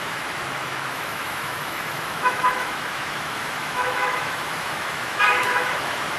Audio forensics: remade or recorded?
remade